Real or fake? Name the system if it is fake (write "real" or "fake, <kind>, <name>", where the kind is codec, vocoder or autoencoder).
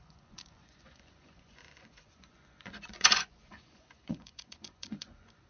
fake, vocoder, Vocos